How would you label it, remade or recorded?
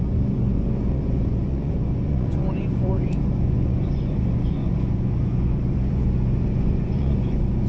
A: remade